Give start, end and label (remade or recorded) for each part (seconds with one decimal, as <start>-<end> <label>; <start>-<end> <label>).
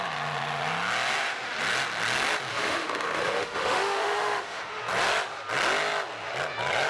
0.0-2.5 recorded; 2.5-4.8 remade; 4.8-6.9 recorded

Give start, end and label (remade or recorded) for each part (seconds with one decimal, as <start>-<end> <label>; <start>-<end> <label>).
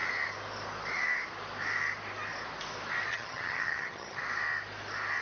0.0-3.1 recorded; 3.1-4.2 remade; 4.2-5.2 recorded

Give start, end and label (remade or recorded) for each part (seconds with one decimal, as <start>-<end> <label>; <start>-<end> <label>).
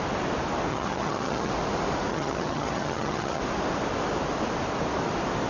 0.0-0.7 recorded; 0.7-1.5 remade; 1.5-2.1 recorded; 2.1-3.4 remade; 3.4-5.5 recorded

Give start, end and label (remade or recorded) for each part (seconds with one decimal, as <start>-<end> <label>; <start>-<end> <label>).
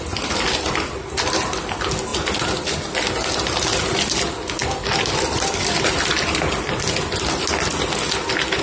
0.0-8.6 recorded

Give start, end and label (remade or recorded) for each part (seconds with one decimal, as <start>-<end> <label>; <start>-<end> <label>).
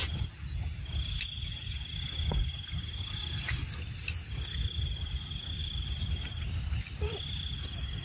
0.0-5.6 recorded; 5.6-7.5 remade; 7.5-8.0 recorded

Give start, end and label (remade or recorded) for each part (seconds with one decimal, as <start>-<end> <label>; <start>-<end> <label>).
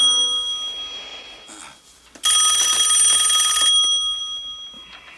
0.0-5.2 recorded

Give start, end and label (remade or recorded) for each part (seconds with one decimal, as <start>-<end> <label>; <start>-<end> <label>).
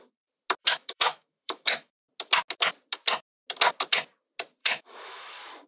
0.0-0.6 recorded; 0.6-2.0 remade; 2.0-4.6 recorded; 4.6-5.2 remade; 5.2-5.7 recorded